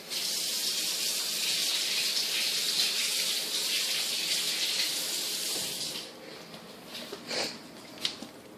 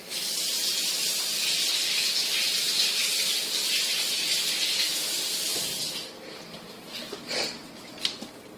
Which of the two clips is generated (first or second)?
second